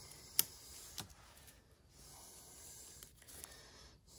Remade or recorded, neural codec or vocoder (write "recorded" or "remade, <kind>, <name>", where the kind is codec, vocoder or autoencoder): recorded